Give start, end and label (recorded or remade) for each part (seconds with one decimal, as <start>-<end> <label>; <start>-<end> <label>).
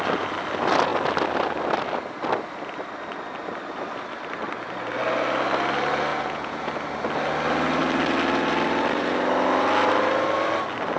0.0-6.1 recorded; 6.1-6.7 remade; 6.7-11.0 recorded